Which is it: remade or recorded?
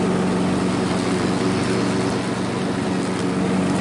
recorded